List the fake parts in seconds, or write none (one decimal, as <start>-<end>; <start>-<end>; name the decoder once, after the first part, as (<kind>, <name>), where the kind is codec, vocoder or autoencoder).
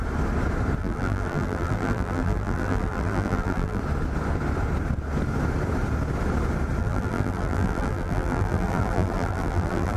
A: 0.8-3.8 (vocoder, BigVGAN v2); 6.8-10.0